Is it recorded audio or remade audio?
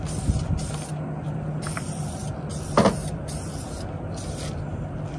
recorded